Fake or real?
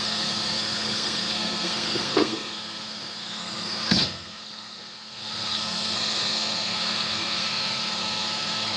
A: fake